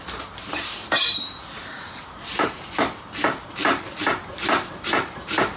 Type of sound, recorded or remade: remade